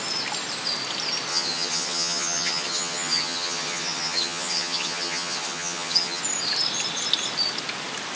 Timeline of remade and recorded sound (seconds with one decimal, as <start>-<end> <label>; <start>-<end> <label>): 0.0-1.3 recorded; 1.3-6.2 remade; 6.2-8.2 recorded